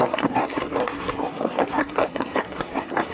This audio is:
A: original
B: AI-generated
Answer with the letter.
B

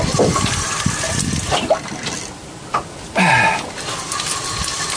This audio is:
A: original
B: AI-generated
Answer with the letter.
A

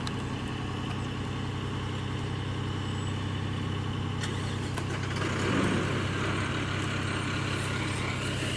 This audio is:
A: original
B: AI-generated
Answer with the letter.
A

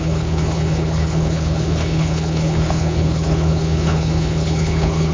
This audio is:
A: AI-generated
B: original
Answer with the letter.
A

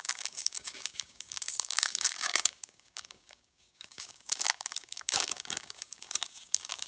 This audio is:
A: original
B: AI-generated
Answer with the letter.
B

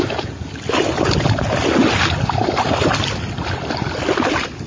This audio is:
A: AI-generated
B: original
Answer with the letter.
B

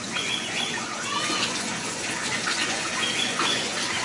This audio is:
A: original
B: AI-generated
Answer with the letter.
B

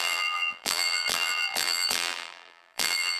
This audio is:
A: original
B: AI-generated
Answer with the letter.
B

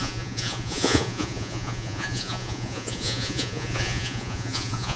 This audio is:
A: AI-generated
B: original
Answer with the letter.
A